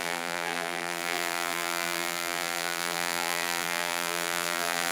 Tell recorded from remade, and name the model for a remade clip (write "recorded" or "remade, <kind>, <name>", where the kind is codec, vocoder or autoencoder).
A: remade, vocoder, BigVGAN v2